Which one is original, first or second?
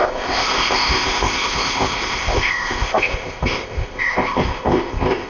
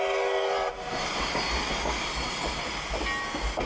second